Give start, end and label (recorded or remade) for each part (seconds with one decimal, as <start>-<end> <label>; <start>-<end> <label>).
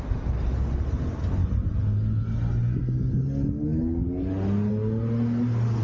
0.0-5.8 recorded